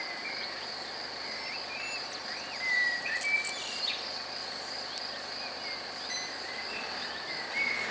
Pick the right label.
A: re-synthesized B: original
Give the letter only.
B